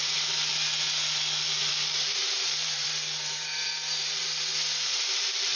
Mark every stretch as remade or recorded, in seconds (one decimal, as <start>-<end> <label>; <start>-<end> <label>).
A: 0.0-0.5 remade; 0.5-1.7 recorded; 1.7-5.6 remade